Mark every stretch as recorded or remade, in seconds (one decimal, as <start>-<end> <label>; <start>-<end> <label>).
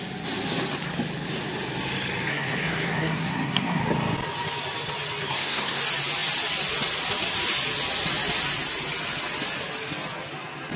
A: 0.0-2.3 recorded; 2.3-3.8 remade; 3.8-5.2 recorded; 5.2-5.8 remade; 5.8-10.8 recorded